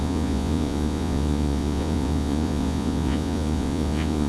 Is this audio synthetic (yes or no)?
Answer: yes